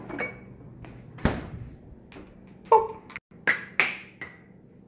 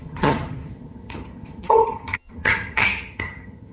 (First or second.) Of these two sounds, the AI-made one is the second